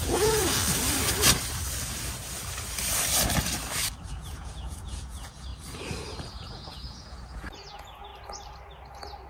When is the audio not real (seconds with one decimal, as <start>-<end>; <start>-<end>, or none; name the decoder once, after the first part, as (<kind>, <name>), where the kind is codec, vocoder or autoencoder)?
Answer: 0.0-0.4 (vocoder, Vocos); 4.1-5.5; 6.3-8.1